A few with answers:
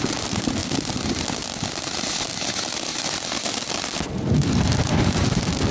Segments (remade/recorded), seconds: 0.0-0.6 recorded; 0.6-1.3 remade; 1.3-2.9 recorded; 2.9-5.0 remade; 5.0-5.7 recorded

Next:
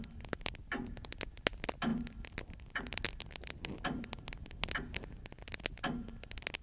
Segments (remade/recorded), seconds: 0.0-0.5 remade; 0.5-1.9 recorded; 1.9-4.1 remade; 4.1-6.6 recorded

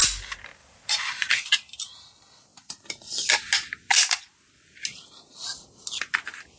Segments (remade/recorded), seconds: 0.0-0.6 recorded; 0.6-1.3 remade; 1.3-6.6 recorded

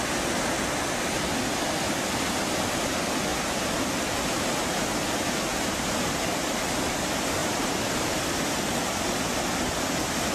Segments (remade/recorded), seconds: 0.0-3.3 recorded; 3.3-4.5 remade; 4.5-7.4 recorded; 7.4-8.4 remade; 8.4-10.3 recorded